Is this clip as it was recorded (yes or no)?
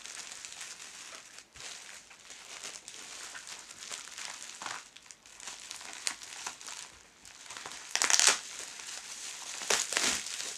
yes